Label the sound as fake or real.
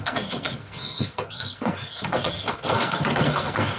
fake